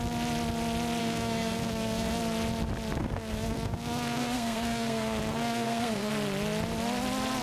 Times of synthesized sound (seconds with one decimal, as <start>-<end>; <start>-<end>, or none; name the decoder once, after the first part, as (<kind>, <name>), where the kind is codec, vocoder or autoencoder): 1.0-2.2 (codec, SNAC); 3.0-6.1